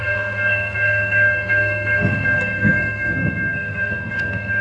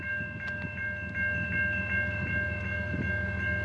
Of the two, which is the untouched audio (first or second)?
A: second